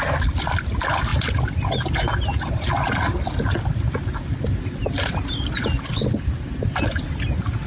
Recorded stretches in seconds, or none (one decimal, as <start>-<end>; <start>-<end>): 0.0-7.7